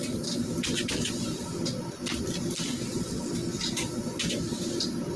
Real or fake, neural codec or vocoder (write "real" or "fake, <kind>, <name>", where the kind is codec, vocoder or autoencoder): real